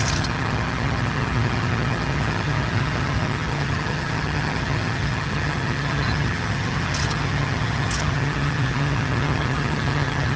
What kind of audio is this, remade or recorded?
remade